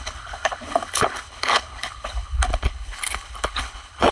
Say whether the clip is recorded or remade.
remade